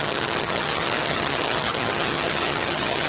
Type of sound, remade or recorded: remade